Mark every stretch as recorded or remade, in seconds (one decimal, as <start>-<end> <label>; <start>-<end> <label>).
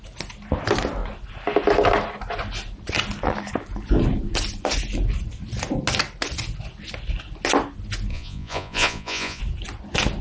0.0-8.1 recorded; 8.1-9.4 remade; 9.4-10.2 recorded